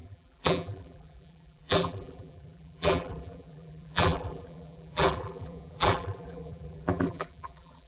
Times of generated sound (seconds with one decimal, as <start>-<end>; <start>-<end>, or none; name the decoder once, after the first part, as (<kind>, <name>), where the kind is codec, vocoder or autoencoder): 0.0-7.9 (vocoder, BigVGAN v2)